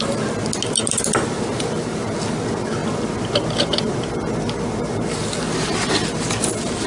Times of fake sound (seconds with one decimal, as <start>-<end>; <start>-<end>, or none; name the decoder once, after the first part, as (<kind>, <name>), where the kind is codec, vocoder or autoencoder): none